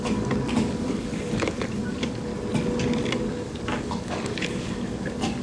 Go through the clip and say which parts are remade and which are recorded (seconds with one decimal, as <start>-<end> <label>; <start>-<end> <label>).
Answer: 0.0-2.3 remade; 2.3-3.3 recorded; 3.3-5.4 remade